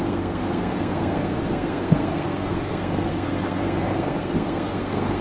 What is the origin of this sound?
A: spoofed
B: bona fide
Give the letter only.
A